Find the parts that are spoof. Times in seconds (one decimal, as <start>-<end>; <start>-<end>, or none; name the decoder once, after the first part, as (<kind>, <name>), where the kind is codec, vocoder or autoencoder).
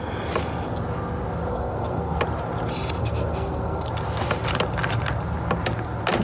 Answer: 1.5-2.2 (codec, SNAC); 3.0-3.9